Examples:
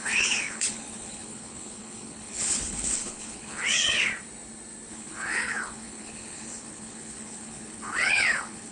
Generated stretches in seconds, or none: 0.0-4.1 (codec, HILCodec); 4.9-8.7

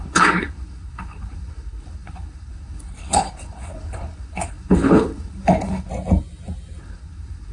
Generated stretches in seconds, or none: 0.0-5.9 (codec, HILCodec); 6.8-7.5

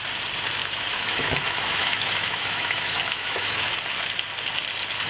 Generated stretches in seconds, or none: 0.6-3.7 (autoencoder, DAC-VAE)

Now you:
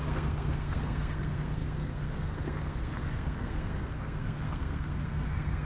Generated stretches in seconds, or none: 0.0-5.7 (codec, SNAC)